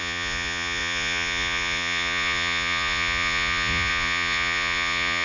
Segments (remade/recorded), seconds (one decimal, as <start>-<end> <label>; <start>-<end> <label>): 0.0-5.2 remade

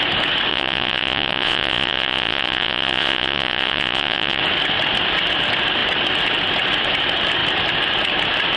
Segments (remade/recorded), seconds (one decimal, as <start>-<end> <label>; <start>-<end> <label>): 0.0-0.5 recorded; 0.5-4.4 remade; 4.4-8.6 recorded

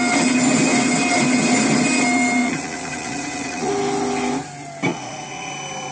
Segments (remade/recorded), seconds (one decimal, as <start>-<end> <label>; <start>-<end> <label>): 0.0-2.4 recorded; 2.4-3.7 remade; 3.7-4.9 recorded; 4.9-5.5 remade; 5.5-5.9 recorded

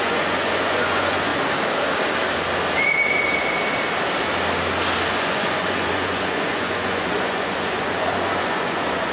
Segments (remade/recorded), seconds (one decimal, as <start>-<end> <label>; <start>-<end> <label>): 0.0-1.3 remade; 1.3-5.1 recorded; 5.1-9.1 remade